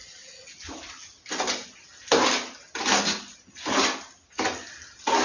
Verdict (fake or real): real